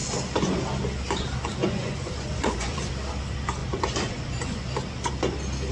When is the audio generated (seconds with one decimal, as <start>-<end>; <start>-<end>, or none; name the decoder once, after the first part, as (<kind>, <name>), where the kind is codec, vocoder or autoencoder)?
1.6-2.9 (vocoder, Vocos); 3.6-4.7

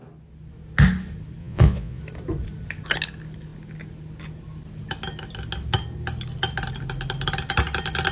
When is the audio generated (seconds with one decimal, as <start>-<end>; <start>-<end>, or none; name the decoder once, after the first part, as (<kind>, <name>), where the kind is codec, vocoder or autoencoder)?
1.4-2.0 (vocoder, Vocos)